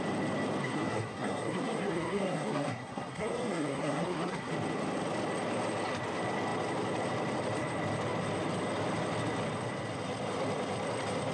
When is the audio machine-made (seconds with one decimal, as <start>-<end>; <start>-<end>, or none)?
0.6-4.5